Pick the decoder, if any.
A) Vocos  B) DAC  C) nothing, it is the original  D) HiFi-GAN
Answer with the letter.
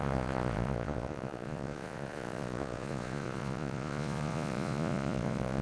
A